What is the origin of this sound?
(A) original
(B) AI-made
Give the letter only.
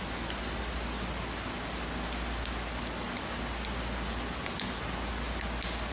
A